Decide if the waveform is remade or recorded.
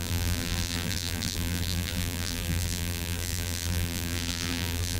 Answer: remade